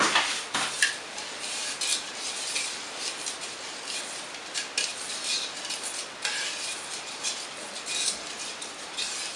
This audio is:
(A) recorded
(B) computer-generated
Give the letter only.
A